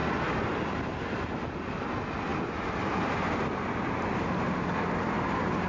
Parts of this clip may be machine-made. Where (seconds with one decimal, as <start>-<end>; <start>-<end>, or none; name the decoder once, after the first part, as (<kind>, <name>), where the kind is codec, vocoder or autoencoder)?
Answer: none